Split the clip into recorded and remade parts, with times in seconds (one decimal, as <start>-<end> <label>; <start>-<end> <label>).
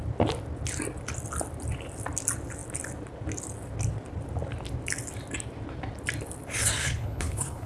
0.0-6.8 recorded; 6.8-7.7 remade